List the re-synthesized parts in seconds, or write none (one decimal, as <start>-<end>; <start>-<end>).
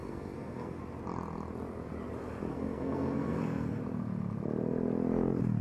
0.0-0.8; 2.5-3.8